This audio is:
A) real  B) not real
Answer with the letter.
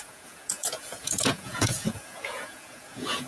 B